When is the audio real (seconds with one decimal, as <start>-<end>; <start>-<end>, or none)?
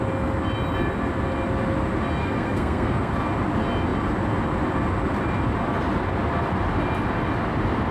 0.0-2.2; 3.1-7.9